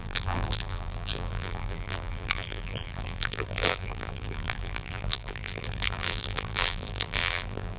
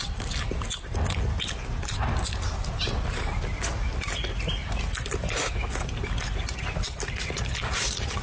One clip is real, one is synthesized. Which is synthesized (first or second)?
first